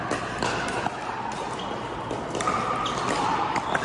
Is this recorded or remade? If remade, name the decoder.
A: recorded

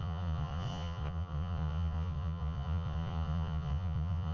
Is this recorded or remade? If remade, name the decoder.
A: remade, vocoder, Vocos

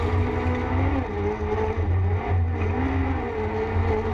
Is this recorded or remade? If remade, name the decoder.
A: recorded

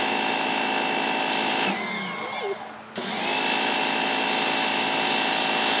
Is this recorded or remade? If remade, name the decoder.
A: recorded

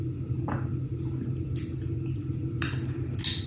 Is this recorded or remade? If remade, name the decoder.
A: recorded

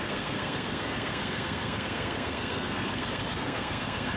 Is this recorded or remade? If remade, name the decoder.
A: remade, codec, SNAC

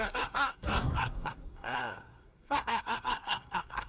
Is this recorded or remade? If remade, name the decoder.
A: remade, codec, SNAC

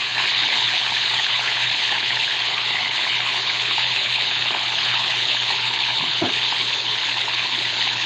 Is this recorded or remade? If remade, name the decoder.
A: remade, codec, HILCodec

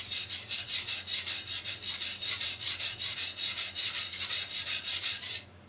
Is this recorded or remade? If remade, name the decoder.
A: recorded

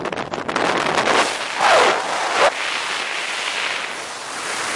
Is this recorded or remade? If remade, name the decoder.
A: recorded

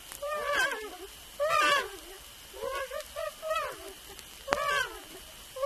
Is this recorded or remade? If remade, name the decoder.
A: remade, vocoder, BigVGAN v2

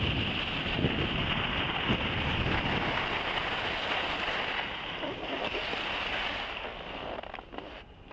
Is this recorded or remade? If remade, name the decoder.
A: recorded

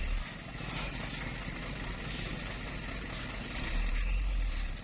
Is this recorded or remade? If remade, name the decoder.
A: recorded